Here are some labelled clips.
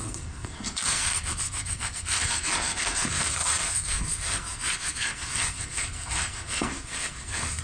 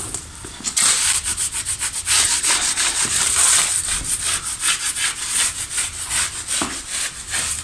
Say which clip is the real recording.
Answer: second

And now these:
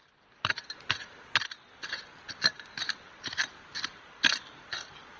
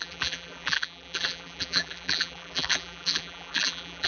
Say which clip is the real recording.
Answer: first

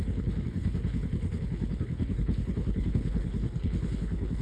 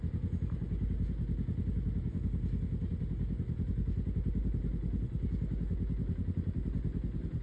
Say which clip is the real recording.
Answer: second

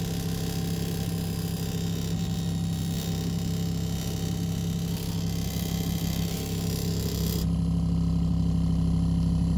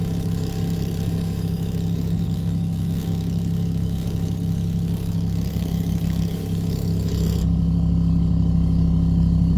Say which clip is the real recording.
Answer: first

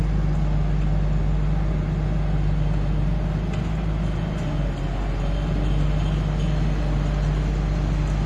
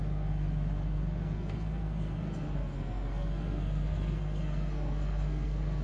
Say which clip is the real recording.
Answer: first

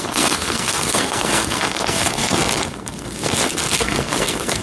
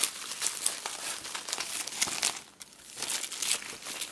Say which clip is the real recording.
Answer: second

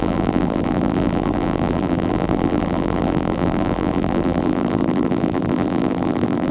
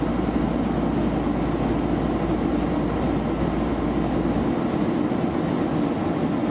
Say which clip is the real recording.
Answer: second